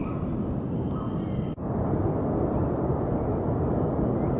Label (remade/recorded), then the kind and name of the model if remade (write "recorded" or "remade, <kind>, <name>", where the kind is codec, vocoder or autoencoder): recorded